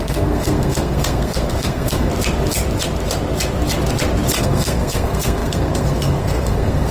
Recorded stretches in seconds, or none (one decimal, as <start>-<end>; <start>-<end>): 2.1-4.4